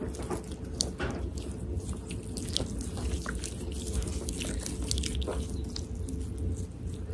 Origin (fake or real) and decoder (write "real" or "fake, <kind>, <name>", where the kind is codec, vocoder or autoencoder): real